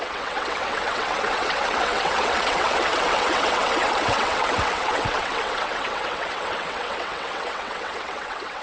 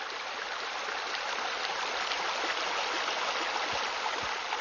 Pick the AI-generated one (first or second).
first